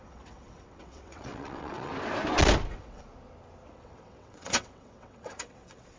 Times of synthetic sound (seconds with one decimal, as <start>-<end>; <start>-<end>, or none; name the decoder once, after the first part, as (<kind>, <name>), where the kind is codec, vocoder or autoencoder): 0.0-1.9 (vocoder, WaveNeXt); 2.7-3.1; 3.7-6.0